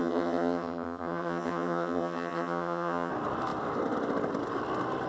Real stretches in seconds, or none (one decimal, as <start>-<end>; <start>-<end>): 3.1-5.1